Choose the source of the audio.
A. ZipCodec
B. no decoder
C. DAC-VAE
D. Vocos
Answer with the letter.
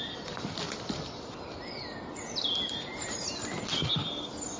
B